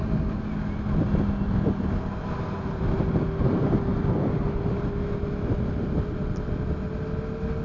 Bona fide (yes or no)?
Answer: yes